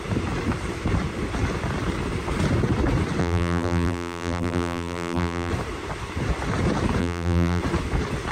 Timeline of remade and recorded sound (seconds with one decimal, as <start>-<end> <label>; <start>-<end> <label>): 0.0-3.2 recorded; 3.2-5.5 remade; 5.5-7.0 recorded; 7.0-7.6 remade; 7.6-8.3 recorded